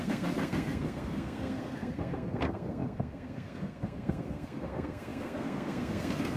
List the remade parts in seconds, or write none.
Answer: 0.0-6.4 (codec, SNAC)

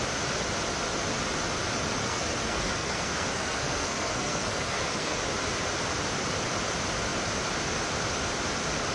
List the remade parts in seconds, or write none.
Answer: 2.0-5.2 (codec, SNAC)

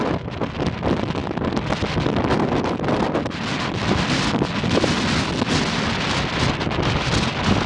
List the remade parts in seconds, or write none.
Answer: none

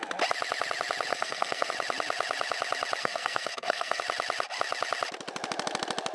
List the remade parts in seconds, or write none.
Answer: 1.1-1.7 (codec, SNAC); 3.0-4.0

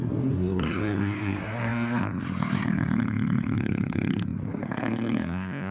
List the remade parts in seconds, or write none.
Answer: 0.0-5.7 (codec, SNAC)

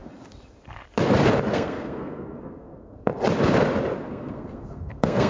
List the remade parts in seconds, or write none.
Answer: 1.5-3.1 (codec, SNAC); 4.1-5.3

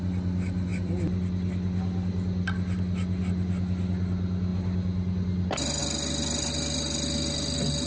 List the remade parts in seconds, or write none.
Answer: none

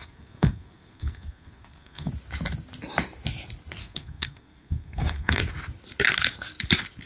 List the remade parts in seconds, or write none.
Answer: 0.0-2.1 (codec, SNAC); 3.8-5.4